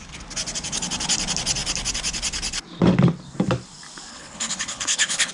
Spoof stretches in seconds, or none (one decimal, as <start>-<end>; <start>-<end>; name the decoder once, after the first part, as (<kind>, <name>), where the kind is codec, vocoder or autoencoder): 4.1-5.3 (codec, HILCodec)